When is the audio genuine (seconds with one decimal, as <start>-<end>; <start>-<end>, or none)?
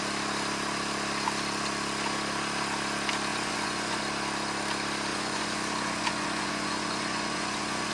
0.0-3.3; 4.0-5.1